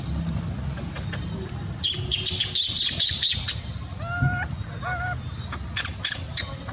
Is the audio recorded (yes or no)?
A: yes